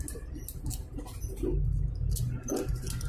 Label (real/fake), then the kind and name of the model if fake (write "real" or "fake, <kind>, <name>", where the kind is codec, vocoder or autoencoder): real